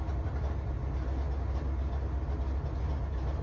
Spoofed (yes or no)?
no